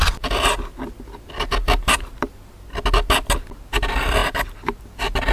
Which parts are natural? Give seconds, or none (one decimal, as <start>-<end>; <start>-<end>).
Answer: 0.0-5.3